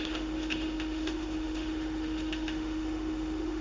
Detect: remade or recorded remade